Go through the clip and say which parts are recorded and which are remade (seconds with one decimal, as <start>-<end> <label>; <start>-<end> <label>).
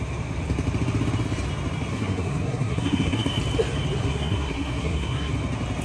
0.0-1.9 recorded; 1.9-3.4 remade; 3.4-4.0 recorded; 4.0-5.3 remade; 5.3-5.8 recorded